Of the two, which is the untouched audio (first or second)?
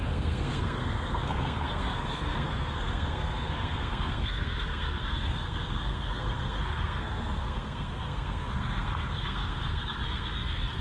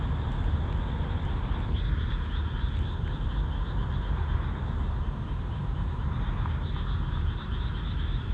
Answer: second